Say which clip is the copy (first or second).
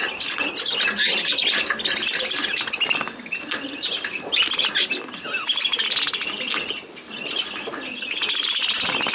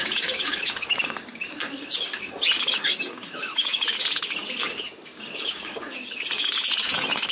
second